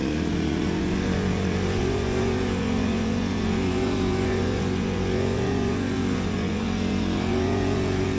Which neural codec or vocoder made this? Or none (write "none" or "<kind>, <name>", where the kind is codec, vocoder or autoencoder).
vocoder, Vocos